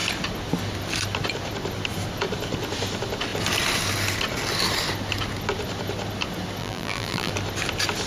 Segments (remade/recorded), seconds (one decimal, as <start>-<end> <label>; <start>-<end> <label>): 0.0-6.6 recorded; 6.6-7.3 remade; 7.3-8.1 recorded